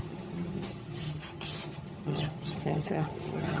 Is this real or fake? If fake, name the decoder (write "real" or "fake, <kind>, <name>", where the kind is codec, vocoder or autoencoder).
fake, vocoder, HiFi-GAN